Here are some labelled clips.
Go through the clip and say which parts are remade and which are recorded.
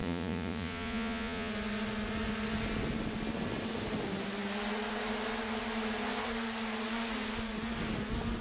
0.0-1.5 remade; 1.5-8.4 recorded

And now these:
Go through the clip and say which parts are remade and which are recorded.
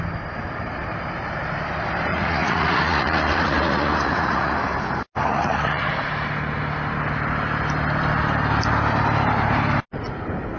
0.0-2.1 recorded; 2.1-4.6 remade; 4.6-5.3 recorded; 5.3-5.9 remade; 5.9-10.6 recorded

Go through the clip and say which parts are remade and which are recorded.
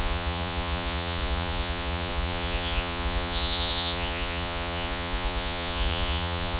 0.0-6.6 remade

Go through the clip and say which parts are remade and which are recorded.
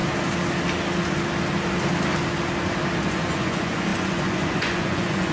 0.0-3.1 recorded; 3.1-5.3 remade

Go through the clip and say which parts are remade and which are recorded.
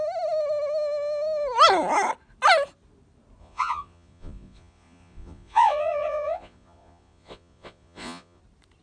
0.0-3.4 recorded; 3.4-8.4 remade; 8.4-8.8 recorded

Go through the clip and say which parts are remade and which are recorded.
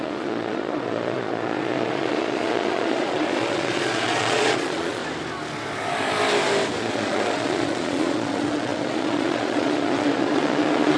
0.0-5.0 remade; 5.0-6.8 recorded; 6.8-11.0 remade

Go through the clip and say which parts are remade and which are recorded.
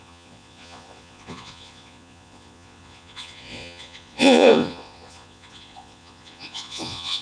0.0-7.2 remade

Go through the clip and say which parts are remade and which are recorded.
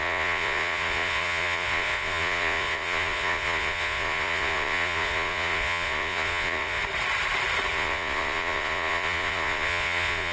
0.0-6.8 remade; 6.8-7.7 recorded; 7.7-10.3 remade